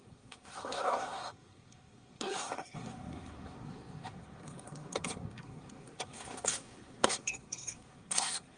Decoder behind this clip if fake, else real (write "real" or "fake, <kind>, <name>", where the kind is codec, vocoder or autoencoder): fake, codec, SNAC